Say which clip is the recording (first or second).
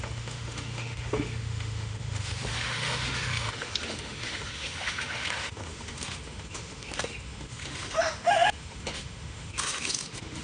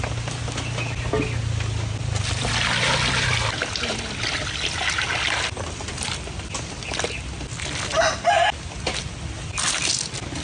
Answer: second